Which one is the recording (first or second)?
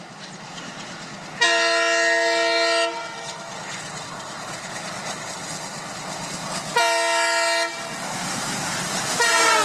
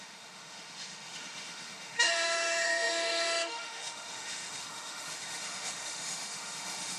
first